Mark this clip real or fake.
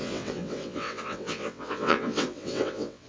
fake